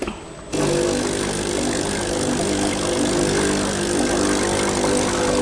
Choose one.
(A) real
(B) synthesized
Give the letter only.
A